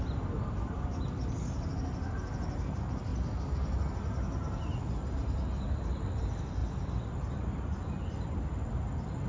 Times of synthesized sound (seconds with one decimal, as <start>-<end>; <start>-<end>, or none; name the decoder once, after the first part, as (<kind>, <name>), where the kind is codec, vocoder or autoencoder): none